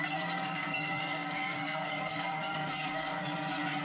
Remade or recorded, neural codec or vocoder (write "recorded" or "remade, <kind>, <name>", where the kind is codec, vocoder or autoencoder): remade, codec, SNAC